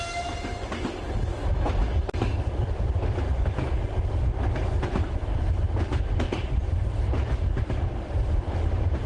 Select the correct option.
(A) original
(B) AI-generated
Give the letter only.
A